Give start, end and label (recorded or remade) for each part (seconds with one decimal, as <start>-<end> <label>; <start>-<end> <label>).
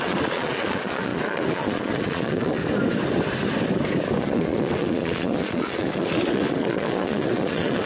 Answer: 0.0-2.6 remade; 2.6-4.2 recorded; 4.2-7.9 remade